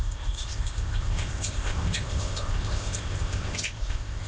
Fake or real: fake